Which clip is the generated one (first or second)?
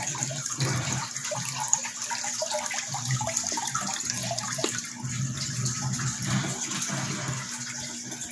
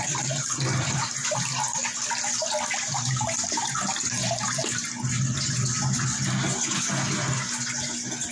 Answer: first